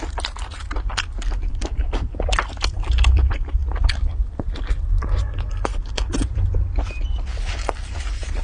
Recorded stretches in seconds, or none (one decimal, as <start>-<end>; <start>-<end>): none